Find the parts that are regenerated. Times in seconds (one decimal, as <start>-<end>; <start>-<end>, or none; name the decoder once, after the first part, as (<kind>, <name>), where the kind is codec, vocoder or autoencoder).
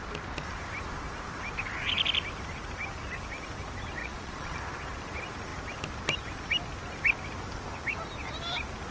4.0-4.6 (vocoder, Vocos)